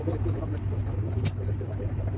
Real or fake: real